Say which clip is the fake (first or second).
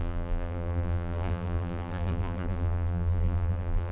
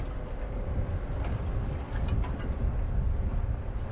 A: first